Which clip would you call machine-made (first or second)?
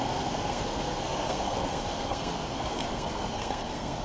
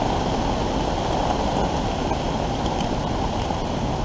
first